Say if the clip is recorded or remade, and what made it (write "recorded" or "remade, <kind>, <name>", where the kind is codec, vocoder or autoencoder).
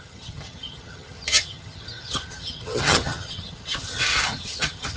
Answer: remade, vocoder, HiFi-GAN